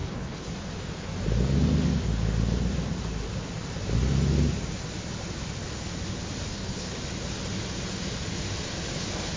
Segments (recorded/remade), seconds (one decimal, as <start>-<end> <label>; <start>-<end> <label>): 0.0-0.5 remade; 0.5-6.5 recorded; 6.5-7.0 remade; 7.0-9.4 recorded